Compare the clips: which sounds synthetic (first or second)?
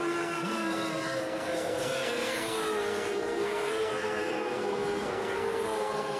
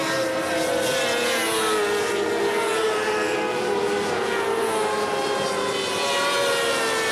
first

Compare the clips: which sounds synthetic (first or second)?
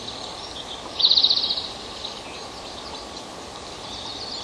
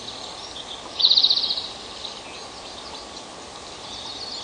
first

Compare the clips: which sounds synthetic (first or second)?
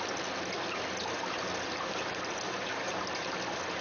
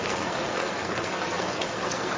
second